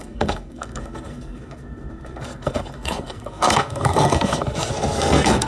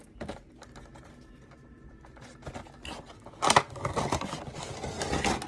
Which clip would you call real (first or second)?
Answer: second